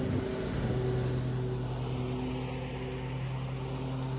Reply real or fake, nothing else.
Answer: real